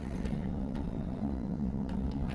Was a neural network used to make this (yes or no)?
yes